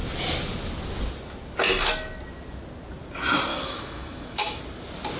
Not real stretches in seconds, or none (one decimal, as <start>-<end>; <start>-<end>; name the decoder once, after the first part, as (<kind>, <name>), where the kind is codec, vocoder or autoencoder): 3.5-4.6 (autoencoder, DAC-VAE)